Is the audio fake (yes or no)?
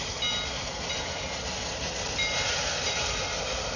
no